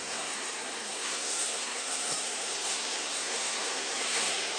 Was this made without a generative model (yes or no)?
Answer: no